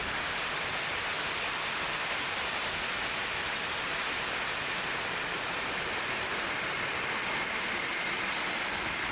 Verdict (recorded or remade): recorded